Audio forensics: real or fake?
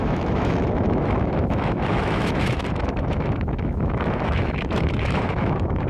fake